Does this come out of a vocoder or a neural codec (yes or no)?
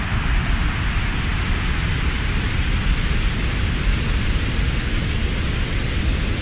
no